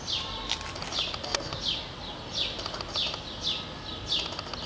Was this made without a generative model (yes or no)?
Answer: yes